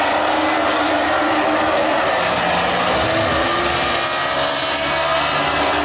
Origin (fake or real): real